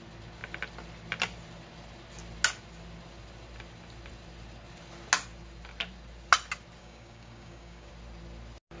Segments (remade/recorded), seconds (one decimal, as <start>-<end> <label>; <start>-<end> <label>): 0.0-6.8 recorded; 6.8-7.9 remade; 7.9-8.8 recorded